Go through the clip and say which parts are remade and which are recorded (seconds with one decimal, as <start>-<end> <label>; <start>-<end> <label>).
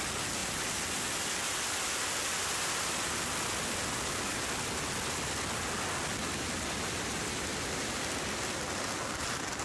0.0-9.6 recorded